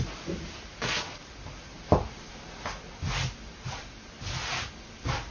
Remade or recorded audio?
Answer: recorded